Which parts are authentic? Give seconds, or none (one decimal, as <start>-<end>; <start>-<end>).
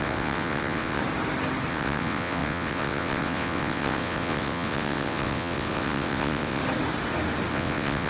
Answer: 1.0-1.7; 6.6-7.5